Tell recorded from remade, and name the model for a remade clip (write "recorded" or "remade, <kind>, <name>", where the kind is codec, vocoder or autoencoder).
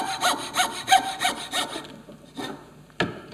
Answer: recorded